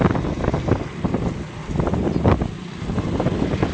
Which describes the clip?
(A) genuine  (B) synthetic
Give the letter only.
A